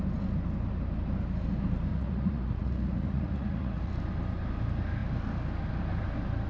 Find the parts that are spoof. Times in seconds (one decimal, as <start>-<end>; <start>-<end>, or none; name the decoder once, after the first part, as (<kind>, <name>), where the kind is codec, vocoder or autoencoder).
1.9-3.9 (vocoder, Vocos)

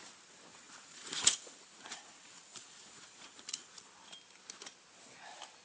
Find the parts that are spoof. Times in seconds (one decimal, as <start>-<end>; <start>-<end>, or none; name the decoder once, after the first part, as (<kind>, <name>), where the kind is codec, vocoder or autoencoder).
0.5-3.9 (vocoder, Vocos)